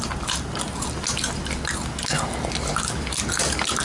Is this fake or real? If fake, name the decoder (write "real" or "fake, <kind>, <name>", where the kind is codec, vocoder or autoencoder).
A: real